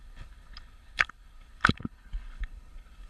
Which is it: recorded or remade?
remade